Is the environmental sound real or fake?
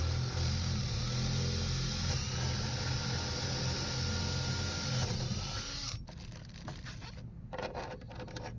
real